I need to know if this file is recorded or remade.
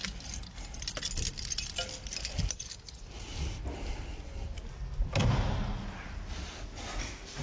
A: recorded